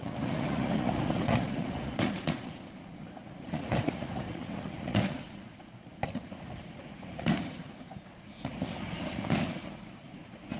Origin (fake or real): fake